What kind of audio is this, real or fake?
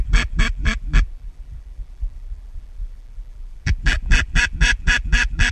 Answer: fake